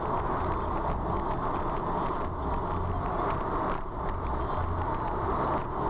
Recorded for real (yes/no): yes